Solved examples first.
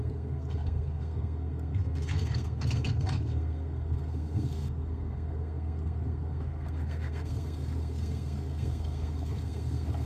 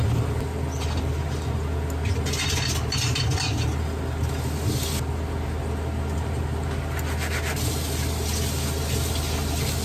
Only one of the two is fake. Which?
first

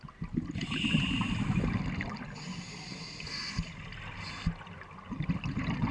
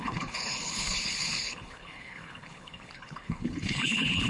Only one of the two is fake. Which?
second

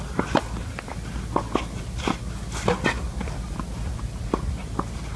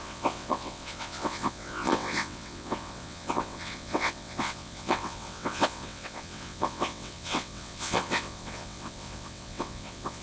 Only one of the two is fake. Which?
second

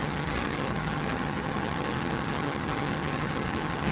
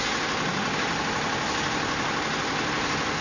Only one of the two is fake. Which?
first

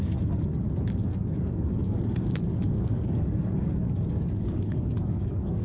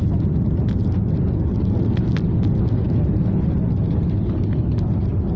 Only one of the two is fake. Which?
first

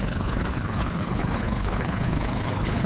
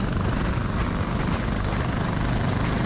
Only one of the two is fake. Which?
first